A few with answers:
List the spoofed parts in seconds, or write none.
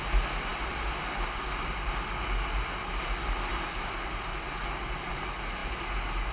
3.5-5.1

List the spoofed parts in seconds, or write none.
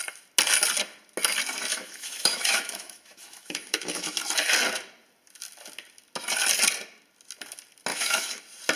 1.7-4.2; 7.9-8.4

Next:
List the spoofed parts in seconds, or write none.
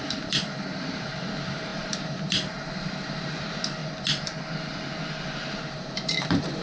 0.0-3.8; 5.6-6.6